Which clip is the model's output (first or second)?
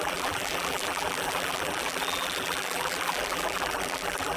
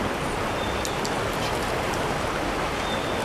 first